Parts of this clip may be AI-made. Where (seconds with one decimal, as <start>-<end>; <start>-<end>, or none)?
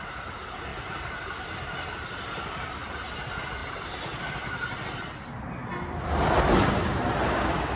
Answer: 0.7-2.7; 5.6-6.6